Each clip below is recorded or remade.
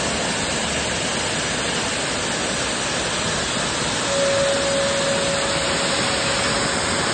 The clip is recorded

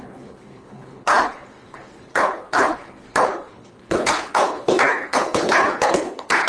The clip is remade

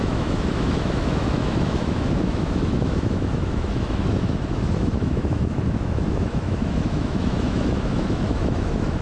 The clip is remade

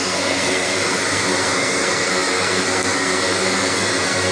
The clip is remade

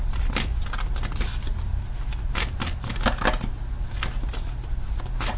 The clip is recorded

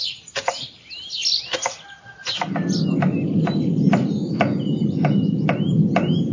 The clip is recorded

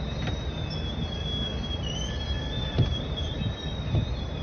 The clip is recorded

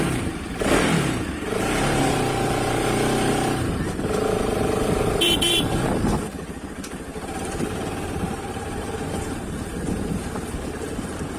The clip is remade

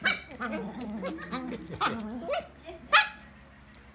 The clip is recorded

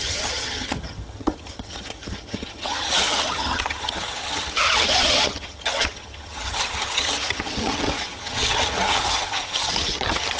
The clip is remade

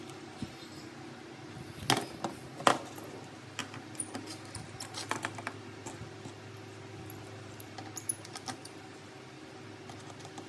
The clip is recorded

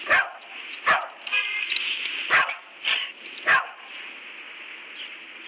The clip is recorded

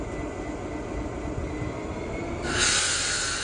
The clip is recorded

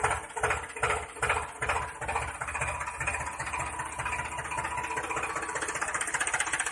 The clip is recorded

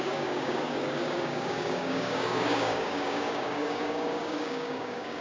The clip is remade